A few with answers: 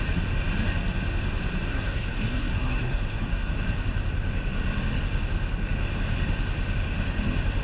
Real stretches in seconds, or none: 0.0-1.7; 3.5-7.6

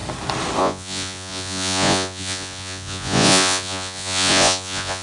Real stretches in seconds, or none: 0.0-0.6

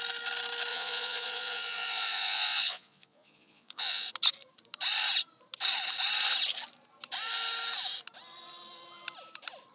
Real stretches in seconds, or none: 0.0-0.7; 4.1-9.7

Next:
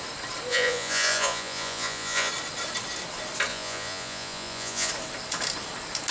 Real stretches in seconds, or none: 0.0-0.5; 2.3-3.5; 4.9-6.1

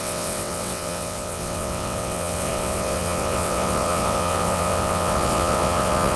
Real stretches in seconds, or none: none